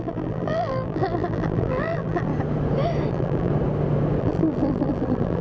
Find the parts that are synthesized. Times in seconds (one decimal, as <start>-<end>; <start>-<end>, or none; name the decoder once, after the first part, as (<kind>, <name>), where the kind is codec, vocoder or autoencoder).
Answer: 0.0-2.3 (vocoder, BigVGAN v2); 3.1-3.5; 4.2-5.4